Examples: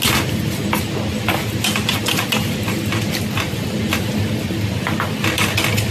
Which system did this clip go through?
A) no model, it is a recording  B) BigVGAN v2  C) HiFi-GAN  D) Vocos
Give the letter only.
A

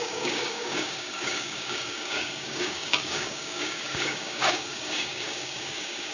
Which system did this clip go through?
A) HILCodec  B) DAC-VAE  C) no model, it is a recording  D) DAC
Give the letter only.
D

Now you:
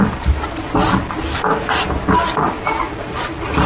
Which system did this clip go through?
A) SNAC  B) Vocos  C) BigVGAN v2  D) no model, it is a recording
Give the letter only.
D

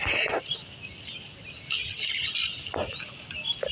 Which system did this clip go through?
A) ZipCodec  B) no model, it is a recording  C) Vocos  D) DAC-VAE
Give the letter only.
B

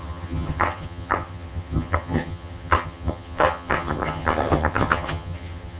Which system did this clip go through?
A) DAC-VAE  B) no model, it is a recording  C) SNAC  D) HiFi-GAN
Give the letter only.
D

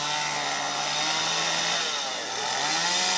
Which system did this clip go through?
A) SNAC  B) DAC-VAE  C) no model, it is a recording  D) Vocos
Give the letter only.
C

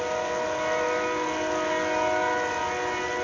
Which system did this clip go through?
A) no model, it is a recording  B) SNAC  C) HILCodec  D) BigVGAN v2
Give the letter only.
A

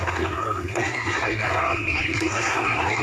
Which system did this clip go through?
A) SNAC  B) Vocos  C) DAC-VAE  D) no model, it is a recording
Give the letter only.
A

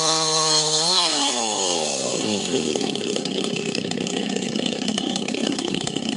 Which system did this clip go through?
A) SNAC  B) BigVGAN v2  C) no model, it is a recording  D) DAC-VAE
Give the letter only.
A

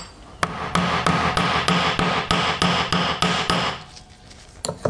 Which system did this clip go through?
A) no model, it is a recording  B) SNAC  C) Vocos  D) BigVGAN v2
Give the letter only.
A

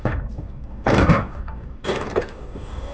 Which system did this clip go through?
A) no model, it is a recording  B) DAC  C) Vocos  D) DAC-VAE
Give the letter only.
B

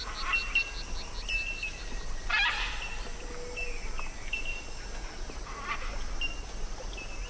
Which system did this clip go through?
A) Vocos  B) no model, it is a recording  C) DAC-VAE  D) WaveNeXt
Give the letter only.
B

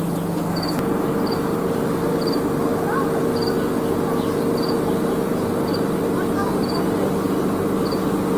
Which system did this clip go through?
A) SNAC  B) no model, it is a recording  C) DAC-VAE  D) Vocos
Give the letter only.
B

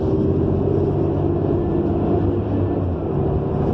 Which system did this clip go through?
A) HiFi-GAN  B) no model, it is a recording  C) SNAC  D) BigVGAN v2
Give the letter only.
B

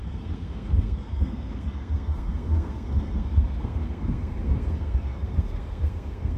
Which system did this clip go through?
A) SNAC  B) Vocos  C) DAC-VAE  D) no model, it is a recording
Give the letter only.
A